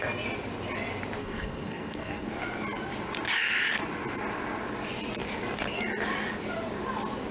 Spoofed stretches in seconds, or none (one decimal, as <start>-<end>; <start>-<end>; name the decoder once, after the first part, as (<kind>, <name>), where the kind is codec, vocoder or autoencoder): 1.2-2.3 (codec, SNAC)